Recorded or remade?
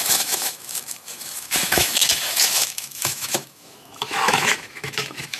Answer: remade